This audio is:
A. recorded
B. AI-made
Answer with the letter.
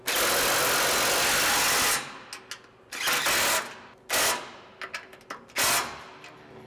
A